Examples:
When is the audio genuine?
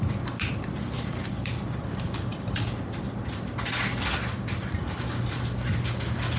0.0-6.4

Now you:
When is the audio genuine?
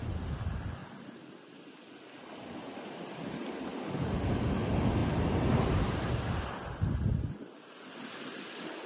0.0-8.9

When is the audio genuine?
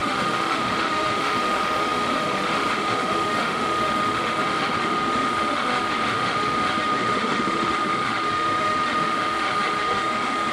none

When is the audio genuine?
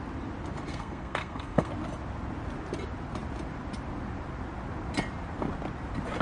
0.0-0.7; 1.7-6.2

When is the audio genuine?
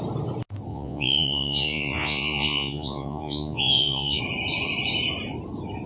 0.0-0.7; 4.2-5.9